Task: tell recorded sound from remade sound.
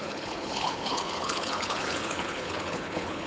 remade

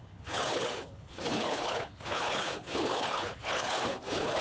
remade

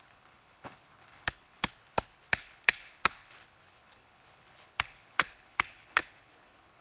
remade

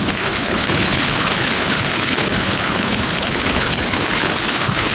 remade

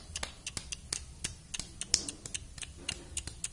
recorded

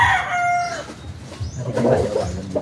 recorded